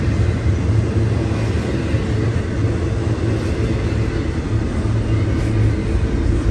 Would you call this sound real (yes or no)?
yes